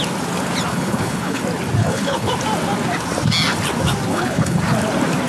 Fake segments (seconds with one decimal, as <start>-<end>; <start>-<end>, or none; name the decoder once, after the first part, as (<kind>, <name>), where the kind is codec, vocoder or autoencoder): 0.7-1.4 (codec, HILCodec); 1.8-2.3; 4.1-4.6